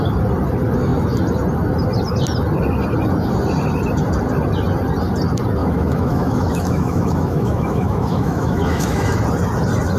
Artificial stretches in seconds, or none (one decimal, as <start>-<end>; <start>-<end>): 5.6-9.2